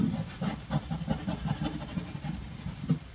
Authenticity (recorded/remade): remade